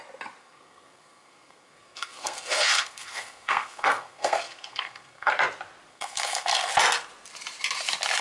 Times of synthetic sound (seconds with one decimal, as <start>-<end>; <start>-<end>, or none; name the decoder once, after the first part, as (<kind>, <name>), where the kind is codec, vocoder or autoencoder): 0.4-5.3 (codec, SNAC); 5.9-6.7